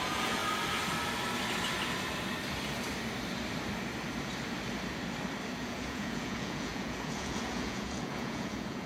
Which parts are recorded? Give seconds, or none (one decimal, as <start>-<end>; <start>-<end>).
0.4-5.6